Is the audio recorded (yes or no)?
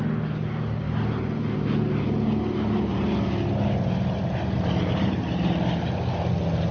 yes